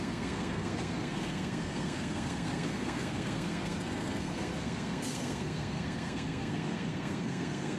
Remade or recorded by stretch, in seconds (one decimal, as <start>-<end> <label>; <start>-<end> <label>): 0.0-7.8 remade